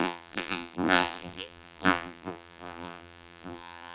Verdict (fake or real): fake